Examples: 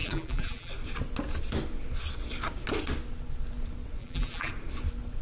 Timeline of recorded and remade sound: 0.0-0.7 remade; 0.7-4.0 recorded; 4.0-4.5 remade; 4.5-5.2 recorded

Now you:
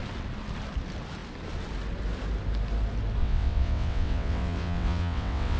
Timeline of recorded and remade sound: 0.0-3.2 recorded; 3.2-5.6 remade

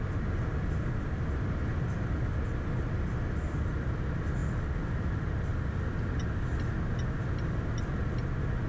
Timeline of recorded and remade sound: 0.0-8.7 recorded

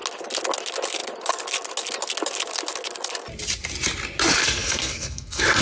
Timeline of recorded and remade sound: 0.0-4.4 recorded; 4.4-5.6 remade

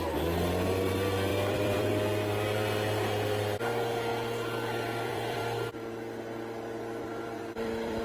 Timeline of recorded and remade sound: 0.0-1.3 recorded; 1.3-1.9 remade; 1.9-4.1 recorded; 4.1-8.0 remade

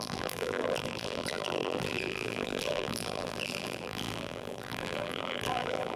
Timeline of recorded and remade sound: 0.0-6.0 remade

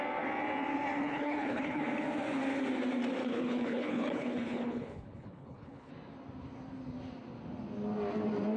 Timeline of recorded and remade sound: 0.0-1.0 recorded; 1.0-1.8 remade; 1.8-3.2 recorded; 3.2-5.9 remade; 5.9-8.6 recorded

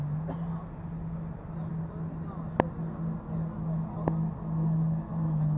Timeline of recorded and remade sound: 0.0-5.6 recorded